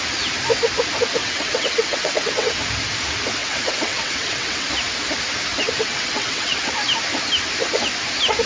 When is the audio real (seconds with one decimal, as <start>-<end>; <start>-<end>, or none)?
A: 0.0-1.2; 2.6-3.4; 4.7-5.5; 6.7-8.5